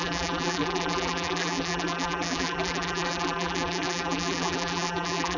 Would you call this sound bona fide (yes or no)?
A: no